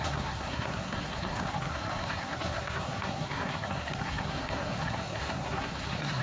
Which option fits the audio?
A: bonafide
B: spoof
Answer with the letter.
B